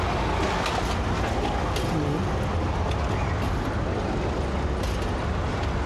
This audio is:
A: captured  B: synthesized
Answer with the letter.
A